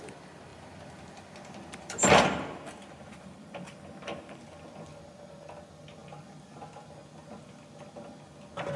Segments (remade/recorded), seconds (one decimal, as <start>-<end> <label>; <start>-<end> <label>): 0.0-0.5 recorded; 0.5-5.0 remade; 5.0-6.0 recorded; 6.0-6.6 remade; 6.6-7.0 recorded; 7.0-7.7 remade; 7.7-8.8 recorded